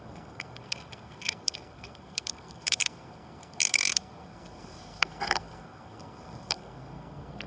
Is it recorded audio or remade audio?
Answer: remade